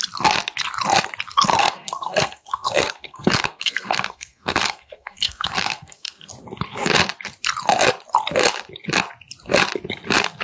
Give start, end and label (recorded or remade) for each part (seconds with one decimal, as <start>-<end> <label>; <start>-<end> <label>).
0.0-1.5 recorded; 1.5-6.3 remade; 6.3-10.4 recorded